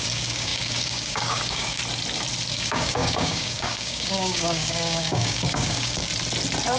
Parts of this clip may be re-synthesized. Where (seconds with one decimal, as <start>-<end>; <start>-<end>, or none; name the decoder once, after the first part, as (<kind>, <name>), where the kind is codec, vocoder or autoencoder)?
0.0-1.8 (codec, DAC); 2.5-6.1